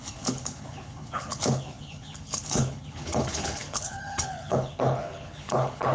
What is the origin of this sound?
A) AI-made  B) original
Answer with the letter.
A